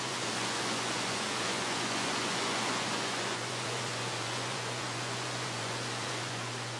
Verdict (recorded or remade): remade